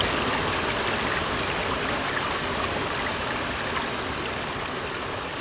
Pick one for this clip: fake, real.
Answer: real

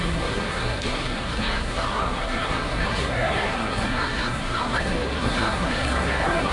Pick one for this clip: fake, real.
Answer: fake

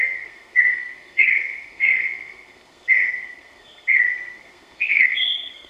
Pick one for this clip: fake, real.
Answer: fake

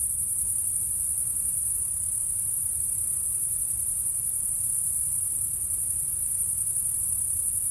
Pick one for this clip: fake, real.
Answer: real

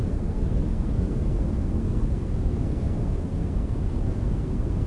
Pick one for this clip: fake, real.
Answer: fake